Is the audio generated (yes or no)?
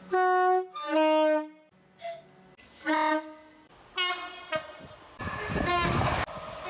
no